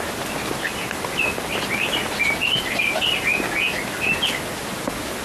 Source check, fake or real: real